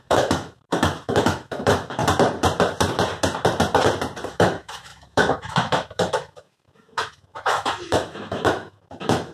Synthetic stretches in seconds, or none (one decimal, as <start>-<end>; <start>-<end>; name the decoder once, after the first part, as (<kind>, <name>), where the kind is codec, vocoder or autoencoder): 0.0-2.0 (autoencoder, DAC-VAE); 4.3-9.3